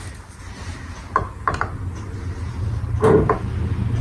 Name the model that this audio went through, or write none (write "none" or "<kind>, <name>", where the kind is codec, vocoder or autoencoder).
none